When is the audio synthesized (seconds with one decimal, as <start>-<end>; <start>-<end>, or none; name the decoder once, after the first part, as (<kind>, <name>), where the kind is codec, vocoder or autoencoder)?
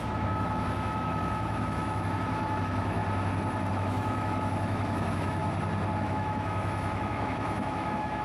0.0-3.0 (autoencoder, DAC-VAE); 3.7-5.4; 6.0-8.2